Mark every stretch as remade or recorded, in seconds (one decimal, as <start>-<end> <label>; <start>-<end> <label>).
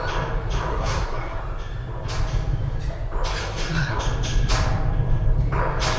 0.0-0.7 recorded; 0.7-1.4 remade; 1.4-3.4 recorded; 3.4-4.0 remade; 4.0-6.0 recorded